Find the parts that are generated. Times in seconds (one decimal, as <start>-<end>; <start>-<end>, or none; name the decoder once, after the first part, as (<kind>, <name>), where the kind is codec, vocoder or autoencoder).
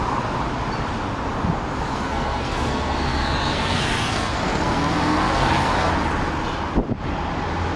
1.9-5.9 (codec, SNAC)